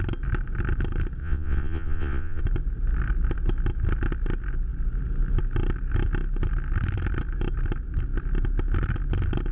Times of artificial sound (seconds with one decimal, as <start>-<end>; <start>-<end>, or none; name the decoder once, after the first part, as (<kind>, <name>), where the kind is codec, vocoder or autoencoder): 1.2-2.4 (vocoder, Vocos)